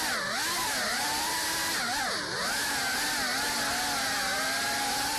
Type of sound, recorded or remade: recorded